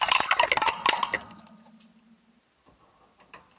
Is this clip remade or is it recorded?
recorded